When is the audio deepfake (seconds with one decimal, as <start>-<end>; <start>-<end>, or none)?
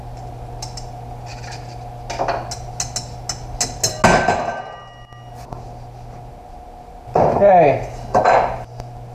none